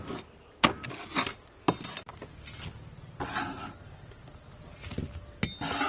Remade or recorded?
recorded